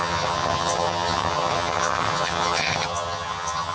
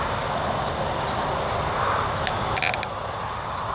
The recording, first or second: second